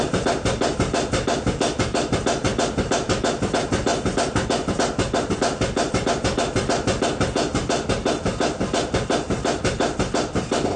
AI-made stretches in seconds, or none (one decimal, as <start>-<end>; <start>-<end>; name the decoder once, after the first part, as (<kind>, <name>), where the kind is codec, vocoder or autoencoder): none